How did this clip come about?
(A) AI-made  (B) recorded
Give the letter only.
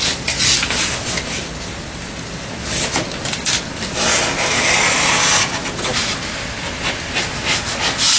B